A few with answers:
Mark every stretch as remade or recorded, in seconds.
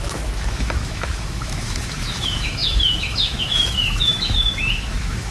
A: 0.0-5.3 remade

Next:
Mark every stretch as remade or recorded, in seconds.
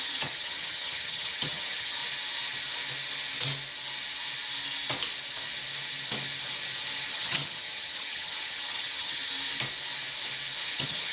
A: 0.0-2.0 remade; 2.0-7.1 recorded; 7.1-9.3 remade; 9.3-10.6 recorded; 10.6-11.1 remade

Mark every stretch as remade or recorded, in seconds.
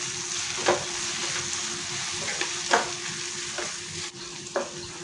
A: 0.0-5.0 recorded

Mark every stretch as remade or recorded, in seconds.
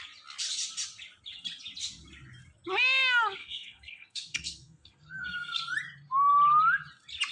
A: 0.0-3.4 recorded; 3.4-5.6 remade; 5.6-7.3 recorded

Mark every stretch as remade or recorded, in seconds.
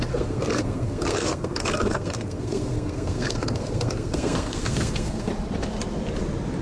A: 0.0-5.3 remade; 5.3-6.6 recorded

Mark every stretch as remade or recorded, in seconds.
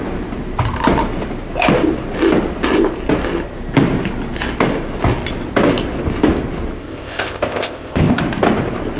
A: 0.0-6.8 recorded; 6.8-8.2 remade; 8.2-9.0 recorded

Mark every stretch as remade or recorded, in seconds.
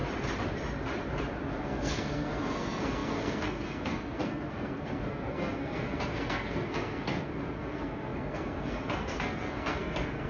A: 0.0-1.6 recorded; 1.6-10.3 remade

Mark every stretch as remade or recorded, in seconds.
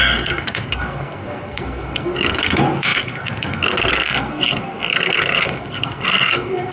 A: 0.0-6.7 remade